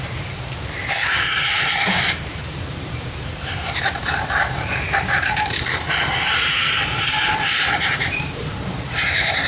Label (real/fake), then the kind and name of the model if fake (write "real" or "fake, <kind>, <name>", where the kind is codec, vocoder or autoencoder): fake, vocoder, BigVGAN v2